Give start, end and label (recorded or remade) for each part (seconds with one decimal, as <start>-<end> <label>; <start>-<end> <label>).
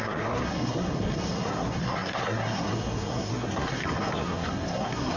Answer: 0.0-5.2 remade